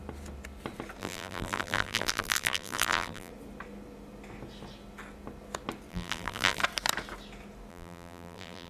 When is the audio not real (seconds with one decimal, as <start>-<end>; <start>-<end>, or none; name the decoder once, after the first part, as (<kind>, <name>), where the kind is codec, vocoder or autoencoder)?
1.0-3.3 (vocoder, BigVGAN v2); 5.9-6.6; 7.7-8.7